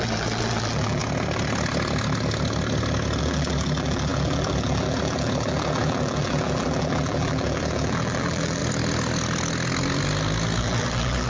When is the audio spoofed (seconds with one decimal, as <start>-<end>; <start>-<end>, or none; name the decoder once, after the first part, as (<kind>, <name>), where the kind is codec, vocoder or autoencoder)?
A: 0.0-1.0 (vocoder, BigVGAN v2); 3.2-8.6; 10.6-11.3